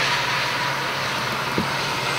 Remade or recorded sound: recorded